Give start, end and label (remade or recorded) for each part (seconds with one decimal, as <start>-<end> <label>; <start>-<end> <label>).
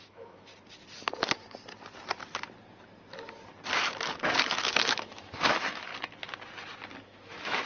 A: 0.0-0.5 remade; 0.5-4.2 recorded; 4.2-5.9 remade; 5.9-7.0 recorded; 7.0-7.7 remade